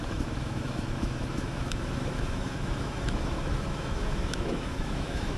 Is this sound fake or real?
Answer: fake